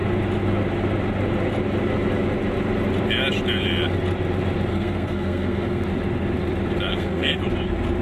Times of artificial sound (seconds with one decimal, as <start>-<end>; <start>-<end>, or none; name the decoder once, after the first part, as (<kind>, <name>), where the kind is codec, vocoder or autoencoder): 4.7-5.8 (codec, SNAC); 6.9-7.4